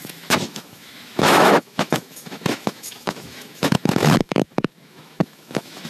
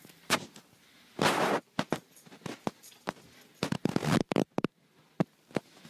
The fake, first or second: first